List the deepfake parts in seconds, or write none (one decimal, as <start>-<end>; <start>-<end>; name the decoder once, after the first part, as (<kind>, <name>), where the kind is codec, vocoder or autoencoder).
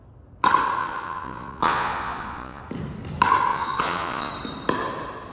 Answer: 0.8-2.6 (vocoder, Vocos); 3.5-4.3